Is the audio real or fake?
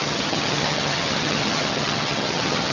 fake